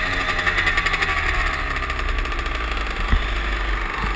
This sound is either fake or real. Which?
real